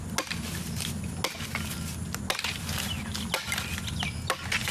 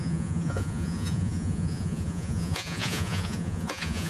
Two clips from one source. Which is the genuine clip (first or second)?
first